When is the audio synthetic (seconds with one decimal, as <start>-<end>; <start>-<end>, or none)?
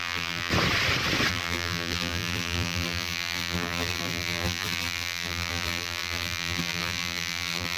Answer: 0.0-0.5; 1.3-7.8